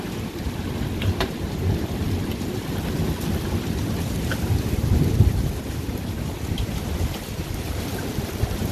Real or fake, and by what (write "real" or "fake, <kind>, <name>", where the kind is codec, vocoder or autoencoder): real